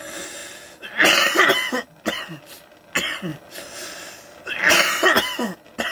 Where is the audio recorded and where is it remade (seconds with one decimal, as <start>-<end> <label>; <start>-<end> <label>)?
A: 0.0-5.9 recorded